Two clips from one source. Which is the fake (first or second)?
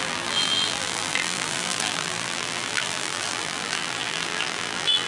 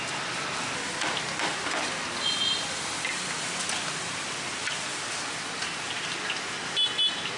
first